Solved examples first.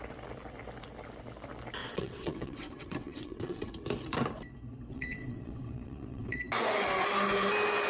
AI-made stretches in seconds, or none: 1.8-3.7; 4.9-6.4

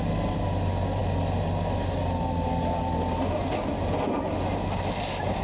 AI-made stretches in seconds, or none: none

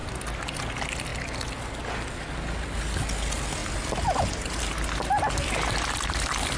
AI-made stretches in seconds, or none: none